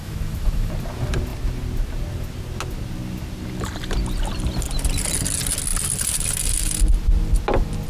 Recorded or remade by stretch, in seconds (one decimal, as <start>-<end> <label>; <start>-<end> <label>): 0.0-0.7 remade; 0.7-7.9 recorded

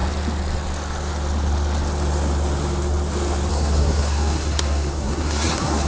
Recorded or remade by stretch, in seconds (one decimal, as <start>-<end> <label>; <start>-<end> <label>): 0.0-3.5 recorded; 3.5-5.9 remade

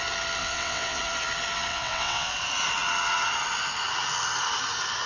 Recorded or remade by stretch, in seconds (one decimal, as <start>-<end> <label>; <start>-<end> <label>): 0.0-0.4 recorded; 0.4-1.0 remade; 1.0-1.7 recorded; 1.7-2.3 remade; 2.3-5.1 recorded

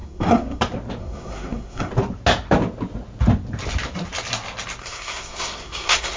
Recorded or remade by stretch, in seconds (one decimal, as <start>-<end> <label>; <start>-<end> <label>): 0.0-0.6 remade; 0.6-1.0 recorded; 1.0-1.9 remade; 1.9-4.8 recorded; 4.8-6.2 remade